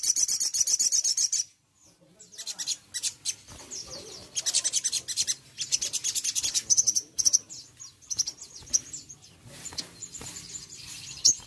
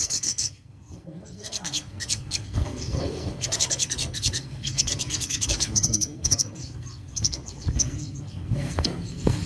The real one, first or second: first